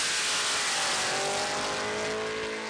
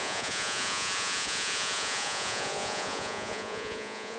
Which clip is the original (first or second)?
first